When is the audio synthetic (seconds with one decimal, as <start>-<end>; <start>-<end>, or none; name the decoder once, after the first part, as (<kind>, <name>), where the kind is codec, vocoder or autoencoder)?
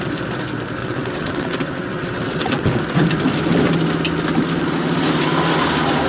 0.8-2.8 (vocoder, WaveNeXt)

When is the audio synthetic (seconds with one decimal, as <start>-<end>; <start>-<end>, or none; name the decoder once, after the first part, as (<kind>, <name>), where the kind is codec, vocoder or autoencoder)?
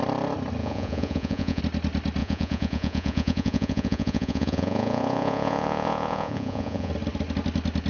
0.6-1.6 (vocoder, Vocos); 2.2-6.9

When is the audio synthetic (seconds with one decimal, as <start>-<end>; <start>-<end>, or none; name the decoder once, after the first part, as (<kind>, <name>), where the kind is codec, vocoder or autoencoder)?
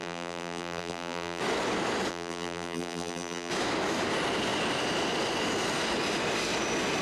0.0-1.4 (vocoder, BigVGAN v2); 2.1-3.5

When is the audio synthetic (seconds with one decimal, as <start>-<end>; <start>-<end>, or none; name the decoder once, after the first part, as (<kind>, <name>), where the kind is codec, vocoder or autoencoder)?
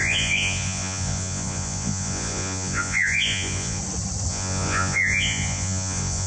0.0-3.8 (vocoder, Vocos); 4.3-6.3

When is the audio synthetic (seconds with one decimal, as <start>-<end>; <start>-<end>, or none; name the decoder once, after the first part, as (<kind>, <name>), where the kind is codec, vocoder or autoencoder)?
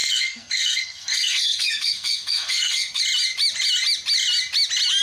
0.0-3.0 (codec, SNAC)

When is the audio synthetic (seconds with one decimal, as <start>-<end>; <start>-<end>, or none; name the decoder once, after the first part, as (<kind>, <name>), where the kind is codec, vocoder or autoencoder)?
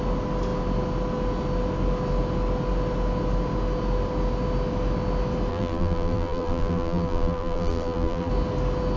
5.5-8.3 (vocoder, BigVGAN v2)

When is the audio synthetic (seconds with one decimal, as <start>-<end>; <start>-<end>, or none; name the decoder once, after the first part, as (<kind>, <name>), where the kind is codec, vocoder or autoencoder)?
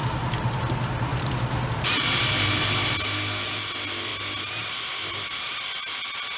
none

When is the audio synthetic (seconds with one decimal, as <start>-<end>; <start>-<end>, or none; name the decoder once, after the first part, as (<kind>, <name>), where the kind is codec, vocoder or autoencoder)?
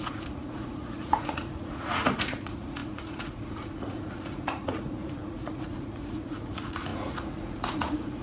0.0-8.2 (vocoder, Vocos)